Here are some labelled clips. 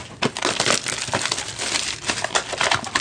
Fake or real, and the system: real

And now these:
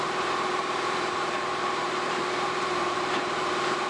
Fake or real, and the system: fake, vocoder, BigVGAN v2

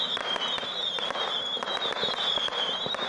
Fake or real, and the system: fake, vocoder, BigVGAN v2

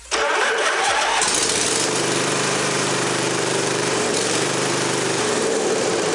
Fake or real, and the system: fake, vocoder, BigVGAN v2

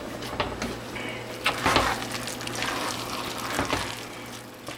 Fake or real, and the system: real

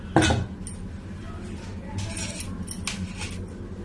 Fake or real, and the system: real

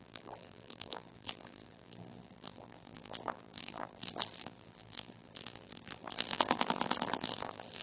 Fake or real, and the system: fake, vocoder, BigVGAN v2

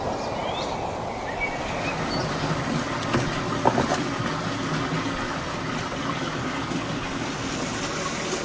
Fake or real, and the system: real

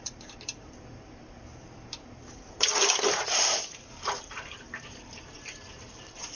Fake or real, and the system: fake, vocoder, BigVGAN v2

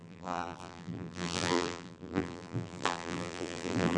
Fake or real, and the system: fake, vocoder, BigVGAN v2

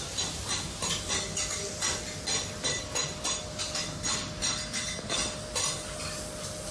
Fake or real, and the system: real